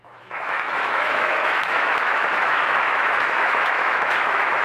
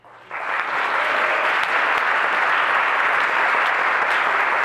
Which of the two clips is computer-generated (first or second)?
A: first